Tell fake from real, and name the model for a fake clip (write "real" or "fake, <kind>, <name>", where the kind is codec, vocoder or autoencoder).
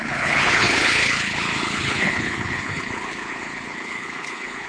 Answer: fake, codec, HILCodec